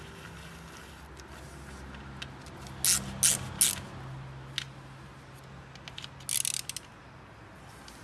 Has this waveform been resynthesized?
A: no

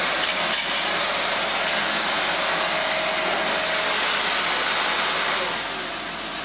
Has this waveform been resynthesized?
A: no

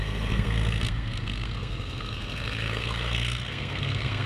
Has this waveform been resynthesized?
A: yes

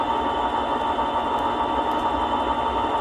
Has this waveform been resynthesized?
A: no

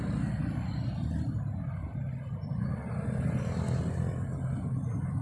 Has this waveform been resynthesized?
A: no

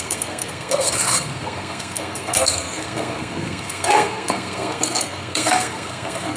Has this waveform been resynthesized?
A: yes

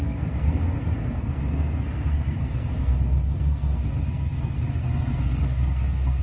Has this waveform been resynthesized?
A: yes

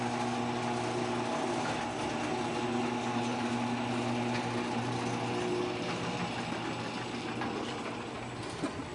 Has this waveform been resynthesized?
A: no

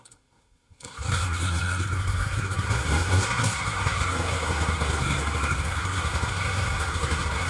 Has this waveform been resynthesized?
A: yes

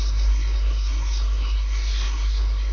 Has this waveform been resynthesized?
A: yes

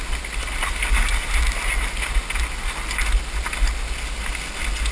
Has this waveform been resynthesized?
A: no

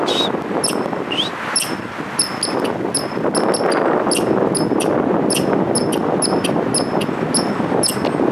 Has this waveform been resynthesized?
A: no